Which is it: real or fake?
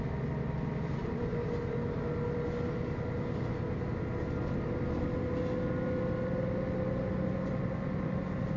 real